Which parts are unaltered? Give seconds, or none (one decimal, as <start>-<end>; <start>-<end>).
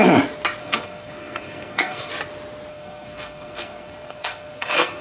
0.0-0.6; 2.1-2.7